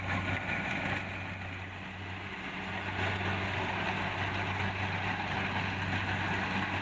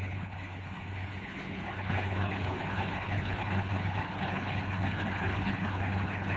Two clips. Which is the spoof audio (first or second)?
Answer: second